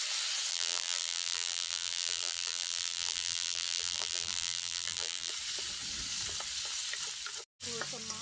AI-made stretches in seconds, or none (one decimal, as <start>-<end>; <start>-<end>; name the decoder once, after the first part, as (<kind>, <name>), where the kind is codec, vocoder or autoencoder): 0.5-5.3 (vocoder, BigVGAN v2)